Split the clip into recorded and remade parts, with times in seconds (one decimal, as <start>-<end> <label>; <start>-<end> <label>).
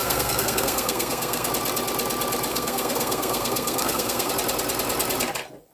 0.0-1.5 remade; 1.5-2.5 recorded; 2.5-4.3 remade; 4.3-5.7 recorded